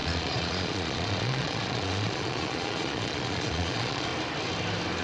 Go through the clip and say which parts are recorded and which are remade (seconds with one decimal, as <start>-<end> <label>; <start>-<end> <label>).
0.0-4.1 remade; 4.1-5.0 recorded